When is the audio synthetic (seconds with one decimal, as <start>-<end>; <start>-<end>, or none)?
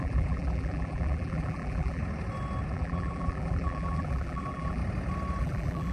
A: 0.0-2.0; 2.7-4.8; 5.4-5.9